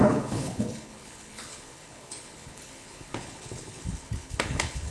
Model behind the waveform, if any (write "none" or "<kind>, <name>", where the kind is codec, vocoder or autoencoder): codec, HILCodec